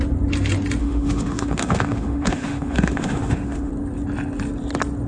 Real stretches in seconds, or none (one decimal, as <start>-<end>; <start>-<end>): 0.0-0.8; 3.7-5.1